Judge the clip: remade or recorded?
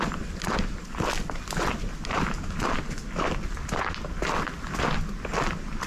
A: recorded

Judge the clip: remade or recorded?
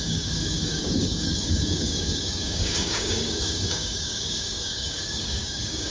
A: remade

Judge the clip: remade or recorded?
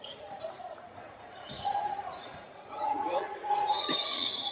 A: remade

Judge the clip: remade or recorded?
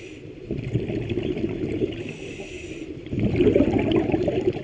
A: recorded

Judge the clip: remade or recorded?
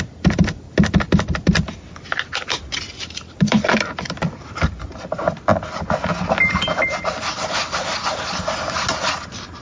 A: recorded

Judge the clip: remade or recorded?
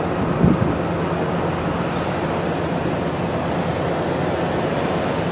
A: recorded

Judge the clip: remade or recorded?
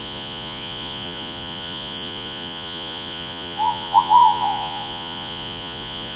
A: remade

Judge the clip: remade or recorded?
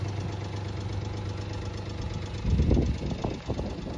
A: recorded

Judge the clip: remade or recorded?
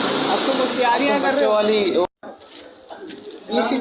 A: recorded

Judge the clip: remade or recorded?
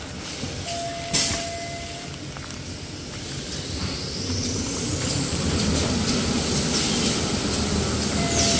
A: recorded